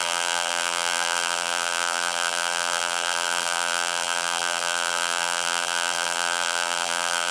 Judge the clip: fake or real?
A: fake